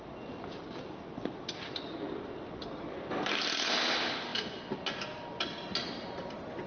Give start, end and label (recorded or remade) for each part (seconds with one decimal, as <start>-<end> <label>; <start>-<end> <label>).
0.0-6.7 recorded